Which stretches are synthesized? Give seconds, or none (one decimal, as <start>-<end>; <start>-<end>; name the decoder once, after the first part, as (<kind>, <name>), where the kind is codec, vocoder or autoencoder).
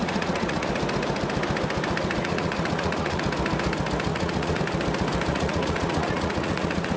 0.0-0.7 (vocoder, Vocos); 2.2-3.2; 4.1-4.6; 5.3-7.0